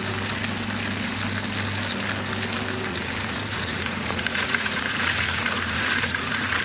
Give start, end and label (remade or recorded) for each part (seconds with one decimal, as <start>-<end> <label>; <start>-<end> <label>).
0.0-2.9 recorded; 2.9-6.6 remade